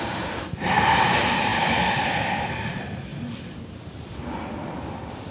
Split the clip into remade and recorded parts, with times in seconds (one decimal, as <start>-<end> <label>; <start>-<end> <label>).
0.0-1.5 recorded; 1.5-2.0 remade; 2.0-3.1 recorded; 3.1-3.6 remade; 3.6-5.3 recorded